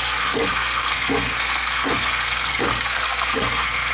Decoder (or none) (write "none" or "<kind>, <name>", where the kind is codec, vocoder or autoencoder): codec, SNAC